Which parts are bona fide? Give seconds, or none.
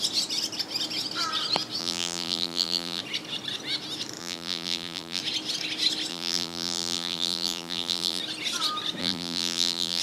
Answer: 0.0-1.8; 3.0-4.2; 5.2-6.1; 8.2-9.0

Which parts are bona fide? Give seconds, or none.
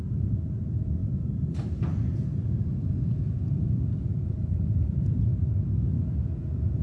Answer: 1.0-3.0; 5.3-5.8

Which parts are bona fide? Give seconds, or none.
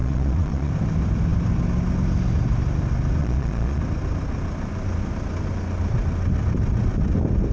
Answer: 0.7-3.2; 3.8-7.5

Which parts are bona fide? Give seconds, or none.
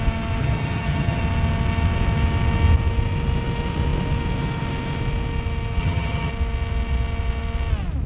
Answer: 0.0-0.4; 1.2-5.8; 6.3-8.1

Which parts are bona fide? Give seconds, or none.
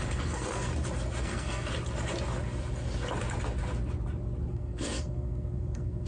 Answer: 0.7-1.2; 1.7-4.5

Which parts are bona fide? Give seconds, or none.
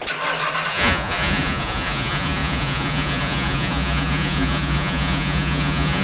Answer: 0.0-0.7